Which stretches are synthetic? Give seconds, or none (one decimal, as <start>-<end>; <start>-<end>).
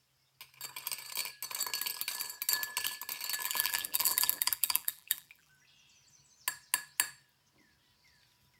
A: 3.4-5.5